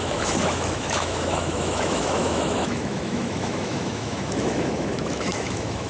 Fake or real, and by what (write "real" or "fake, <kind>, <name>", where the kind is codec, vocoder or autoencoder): fake, autoencoder, DAC-VAE